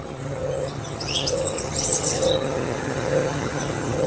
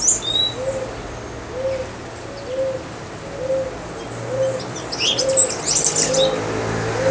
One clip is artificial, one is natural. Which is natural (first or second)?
second